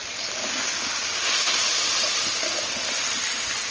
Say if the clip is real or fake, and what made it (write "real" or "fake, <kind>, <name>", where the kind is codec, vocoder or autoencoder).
real